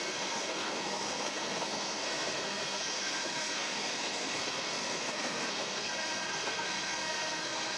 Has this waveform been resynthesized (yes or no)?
yes